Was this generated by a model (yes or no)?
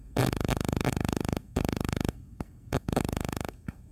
yes